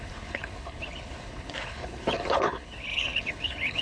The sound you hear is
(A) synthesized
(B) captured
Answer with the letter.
A